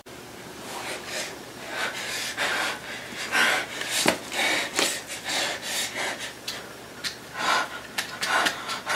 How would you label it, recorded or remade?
recorded